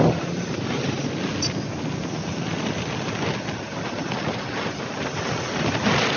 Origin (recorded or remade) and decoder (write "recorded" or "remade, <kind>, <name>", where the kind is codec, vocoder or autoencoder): recorded